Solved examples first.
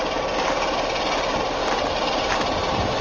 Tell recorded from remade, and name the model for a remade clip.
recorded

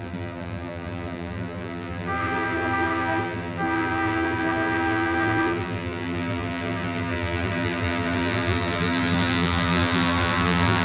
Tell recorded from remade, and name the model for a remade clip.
remade, vocoder, BigVGAN v2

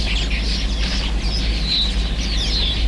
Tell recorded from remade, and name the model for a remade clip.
recorded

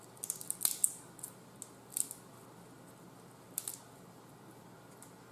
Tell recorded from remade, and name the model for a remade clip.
recorded